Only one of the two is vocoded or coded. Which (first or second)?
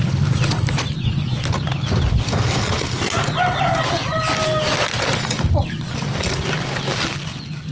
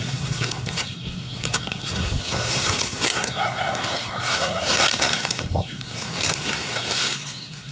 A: second